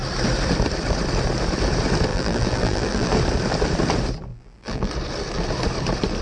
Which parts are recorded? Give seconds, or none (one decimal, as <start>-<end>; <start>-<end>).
0.0-2.1; 3.1-4.3; 4.9-6.2